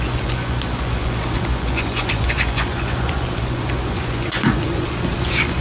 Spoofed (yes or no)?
yes